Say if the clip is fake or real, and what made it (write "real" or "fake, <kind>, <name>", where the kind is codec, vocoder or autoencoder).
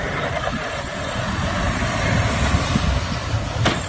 real